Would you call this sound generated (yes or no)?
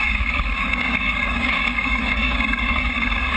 yes